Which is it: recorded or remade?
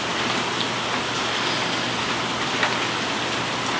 recorded